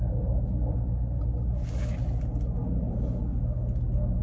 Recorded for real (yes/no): yes